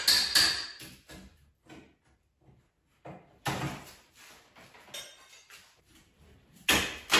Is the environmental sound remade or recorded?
recorded